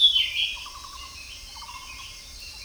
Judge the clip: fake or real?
fake